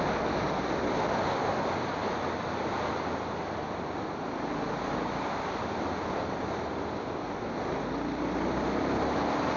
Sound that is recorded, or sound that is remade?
recorded